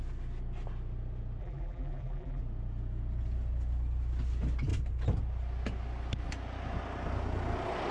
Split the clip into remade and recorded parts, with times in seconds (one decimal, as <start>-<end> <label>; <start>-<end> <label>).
0.0-1.4 recorded; 1.4-2.4 remade; 2.4-7.9 recorded